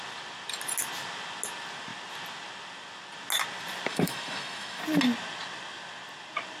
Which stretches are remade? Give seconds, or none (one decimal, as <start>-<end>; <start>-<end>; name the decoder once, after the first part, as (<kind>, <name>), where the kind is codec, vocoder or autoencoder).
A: 3.9-4.8 (autoencoder, DAC-VAE)